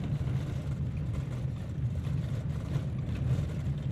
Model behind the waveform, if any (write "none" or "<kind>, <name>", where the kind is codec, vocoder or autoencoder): none